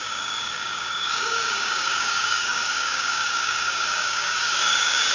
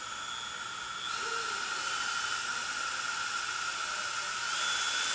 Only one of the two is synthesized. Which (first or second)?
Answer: first